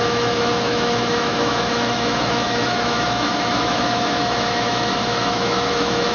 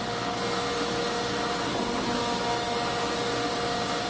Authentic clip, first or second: second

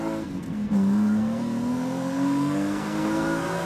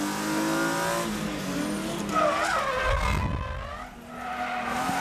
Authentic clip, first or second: second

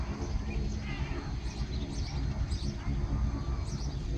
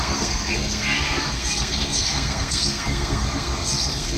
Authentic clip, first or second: first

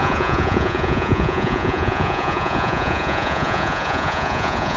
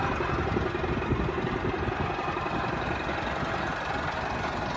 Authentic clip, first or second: second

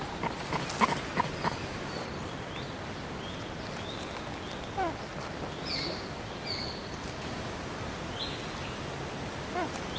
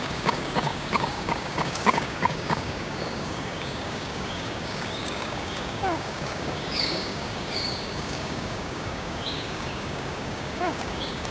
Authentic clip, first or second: first